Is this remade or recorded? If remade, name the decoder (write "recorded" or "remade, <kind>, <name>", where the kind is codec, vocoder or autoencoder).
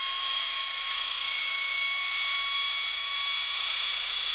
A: remade, autoencoder, DAC-VAE